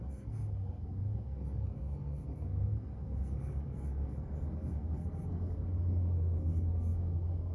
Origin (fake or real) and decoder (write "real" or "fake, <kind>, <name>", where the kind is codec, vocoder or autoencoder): fake, codec, SNAC